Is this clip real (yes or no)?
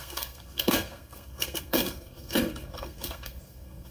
no